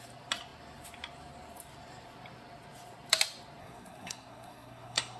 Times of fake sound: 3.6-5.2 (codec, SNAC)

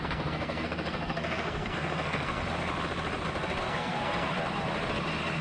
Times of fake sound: 0.0-2.4 (codec, SNAC); 3.6-4.3

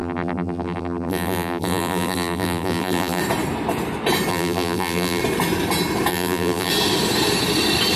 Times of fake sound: 0.0-3.2 (vocoder, BigVGAN v2); 4.3-5.2; 6.1-6.7

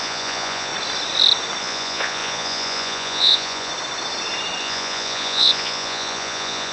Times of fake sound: 0.0-0.7 (vocoder, Vocos); 1.6-3.7; 4.6-6.7

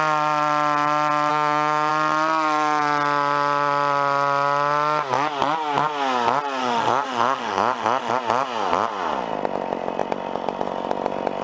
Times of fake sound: 1.3-1.9 (autoencoder, DAC-VAE); 6.6-8.1